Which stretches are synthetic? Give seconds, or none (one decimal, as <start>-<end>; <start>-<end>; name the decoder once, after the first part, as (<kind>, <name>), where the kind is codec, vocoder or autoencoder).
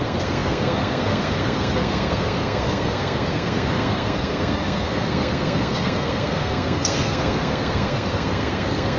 0.0-9.0 (codec, SNAC)